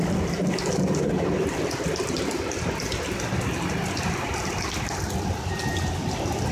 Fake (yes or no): no